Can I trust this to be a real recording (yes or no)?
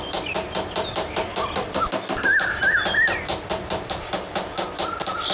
yes